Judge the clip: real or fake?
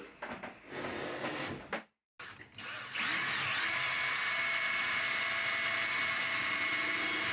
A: real